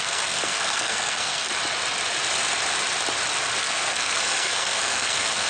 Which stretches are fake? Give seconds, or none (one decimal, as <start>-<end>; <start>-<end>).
0.0-1.5; 3.6-5.5